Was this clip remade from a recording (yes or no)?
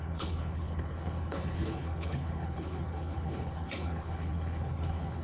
yes